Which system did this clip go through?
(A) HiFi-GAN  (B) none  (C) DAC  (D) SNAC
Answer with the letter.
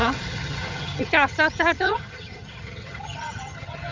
A